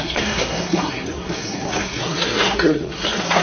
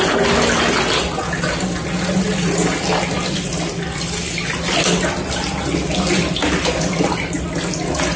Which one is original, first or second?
second